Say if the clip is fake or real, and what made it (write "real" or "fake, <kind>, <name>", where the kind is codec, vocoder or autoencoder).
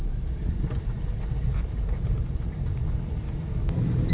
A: fake, vocoder, BigVGAN v2